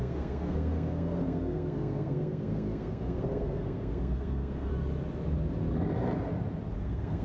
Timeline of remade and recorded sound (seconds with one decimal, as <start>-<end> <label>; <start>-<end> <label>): 0.0-4.7 remade; 4.7-6.8 recorded; 6.8-7.2 remade